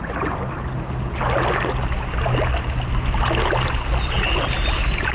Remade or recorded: recorded